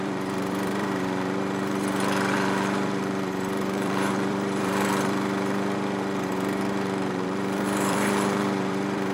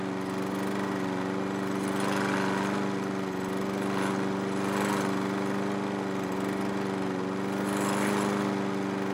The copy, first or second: first